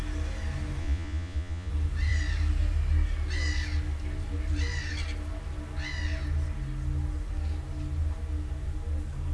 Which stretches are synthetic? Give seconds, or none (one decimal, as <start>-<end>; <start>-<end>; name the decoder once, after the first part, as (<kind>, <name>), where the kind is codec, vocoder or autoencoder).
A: 0.8-1.7 (vocoder, Vocos)